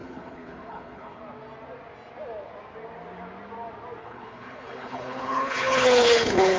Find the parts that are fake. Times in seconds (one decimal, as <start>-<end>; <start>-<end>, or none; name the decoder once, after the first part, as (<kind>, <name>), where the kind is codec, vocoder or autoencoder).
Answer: 0.0-1.2 (codec, HILCodec); 4.0-6.6